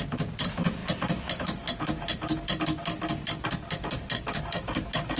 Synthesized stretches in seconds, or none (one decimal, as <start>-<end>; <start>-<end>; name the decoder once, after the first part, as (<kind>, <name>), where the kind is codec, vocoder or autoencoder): none